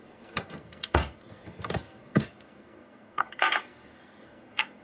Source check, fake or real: fake